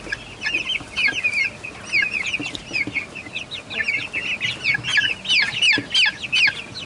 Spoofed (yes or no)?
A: no